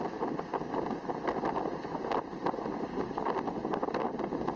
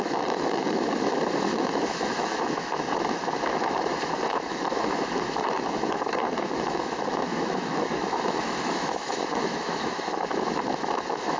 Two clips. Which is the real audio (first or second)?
first